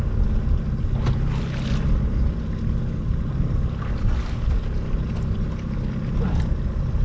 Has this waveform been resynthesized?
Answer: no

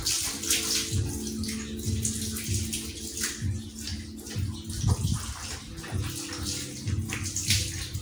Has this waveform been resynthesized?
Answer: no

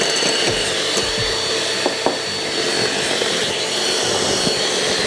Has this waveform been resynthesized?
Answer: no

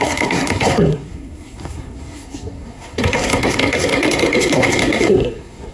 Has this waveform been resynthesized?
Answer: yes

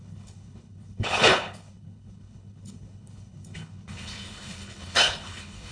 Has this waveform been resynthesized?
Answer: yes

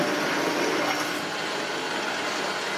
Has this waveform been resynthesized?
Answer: no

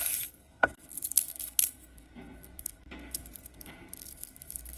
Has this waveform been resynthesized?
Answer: yes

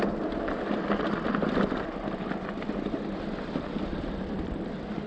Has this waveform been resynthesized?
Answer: no